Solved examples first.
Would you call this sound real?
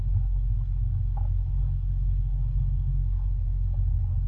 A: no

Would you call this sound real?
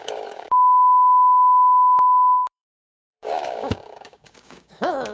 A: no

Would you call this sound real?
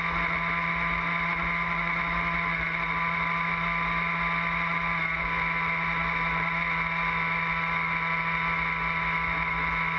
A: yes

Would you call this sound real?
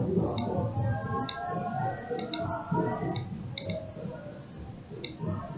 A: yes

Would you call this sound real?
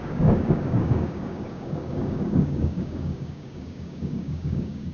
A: no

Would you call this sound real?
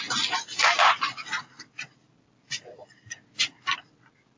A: yes